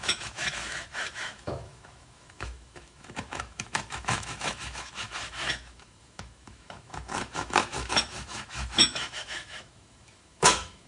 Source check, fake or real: fake